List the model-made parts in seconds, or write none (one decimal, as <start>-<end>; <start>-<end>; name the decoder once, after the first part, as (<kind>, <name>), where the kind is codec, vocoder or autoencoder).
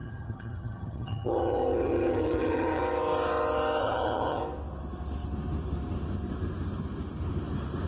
0.0-2.8 (vocoder, HiFi-GAN); 3.8-4.4